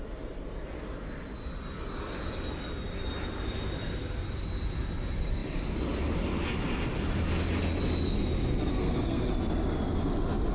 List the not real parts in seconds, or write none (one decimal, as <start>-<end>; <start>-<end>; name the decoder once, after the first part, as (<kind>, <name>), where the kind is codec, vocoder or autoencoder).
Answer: 8.7-9.3 (codec, SNAC)